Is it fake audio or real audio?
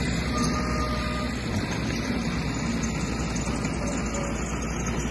real